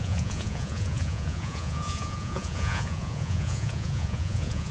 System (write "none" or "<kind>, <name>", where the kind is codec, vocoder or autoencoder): vocoder, Vocos